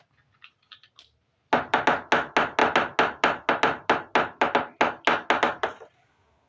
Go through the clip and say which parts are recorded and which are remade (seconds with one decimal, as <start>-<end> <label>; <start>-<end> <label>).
0.0-6.5 recorded